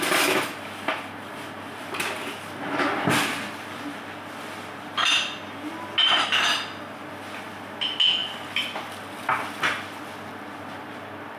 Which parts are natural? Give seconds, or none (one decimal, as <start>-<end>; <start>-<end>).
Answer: 0.0-11.4